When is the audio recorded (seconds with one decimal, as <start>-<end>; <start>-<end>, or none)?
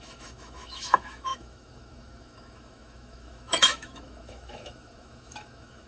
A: none